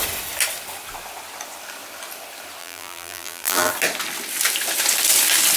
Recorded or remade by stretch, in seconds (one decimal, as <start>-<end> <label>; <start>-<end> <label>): 0.0-2.6 recorded; 2.6-3.7 remade; 3.7-5.6 recorded